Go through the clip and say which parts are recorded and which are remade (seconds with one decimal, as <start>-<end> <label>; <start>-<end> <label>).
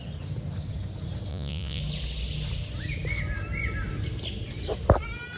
0.0-1.3 recorded; 1.3-1.8 remade; 1.8-5.4 recorded